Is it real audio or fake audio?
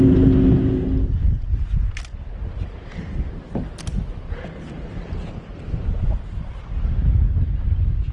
real